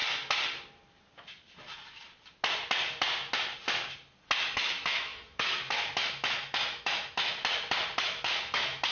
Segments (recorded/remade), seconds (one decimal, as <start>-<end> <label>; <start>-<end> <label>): 0.0-4.4 recorded; 4.4-7.2 remade; 7.2-8.0 recorded; 8.0-8.9 remade